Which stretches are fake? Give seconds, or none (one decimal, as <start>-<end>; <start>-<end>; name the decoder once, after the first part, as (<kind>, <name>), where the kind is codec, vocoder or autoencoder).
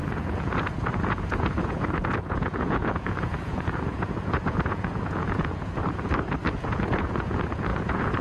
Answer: 0.0-5.8 (vocoder, Vocos); 6.6-8.2